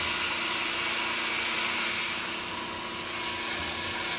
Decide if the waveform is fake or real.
real